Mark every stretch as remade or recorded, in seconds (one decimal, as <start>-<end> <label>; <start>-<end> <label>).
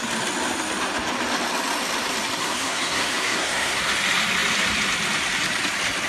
0.0-2.4 recorded; 2.4-3.8 remade; 3.8-6.1 recorded